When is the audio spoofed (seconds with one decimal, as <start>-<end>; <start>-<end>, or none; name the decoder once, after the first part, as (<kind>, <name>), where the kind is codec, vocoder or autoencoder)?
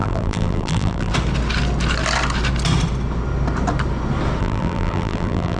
0.0-1.1 (vocoder, BigVGAN v2); 4.4-5.6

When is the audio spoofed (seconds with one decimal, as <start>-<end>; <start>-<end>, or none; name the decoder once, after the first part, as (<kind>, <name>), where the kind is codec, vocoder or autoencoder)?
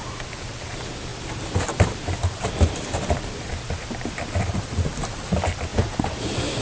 0.0-5.7 (vocoder, BigVGAN v2)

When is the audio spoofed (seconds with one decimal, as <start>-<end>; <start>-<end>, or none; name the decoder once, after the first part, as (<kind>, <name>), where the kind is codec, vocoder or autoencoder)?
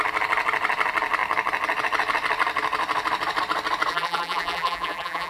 3.9-5.3 (vocoder, BigVGAN v2)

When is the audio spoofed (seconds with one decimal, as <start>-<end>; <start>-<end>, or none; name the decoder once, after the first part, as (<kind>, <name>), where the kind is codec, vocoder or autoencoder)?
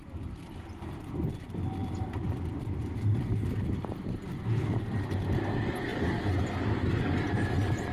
none